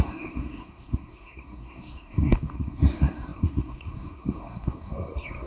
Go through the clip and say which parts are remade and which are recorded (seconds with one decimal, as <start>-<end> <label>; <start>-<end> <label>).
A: 0.0-5.5 remade